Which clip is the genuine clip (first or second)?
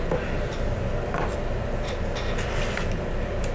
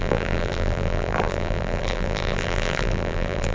first